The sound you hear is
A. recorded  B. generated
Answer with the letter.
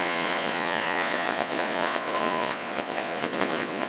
B